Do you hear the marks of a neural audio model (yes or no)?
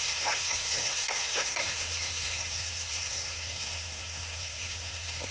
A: yes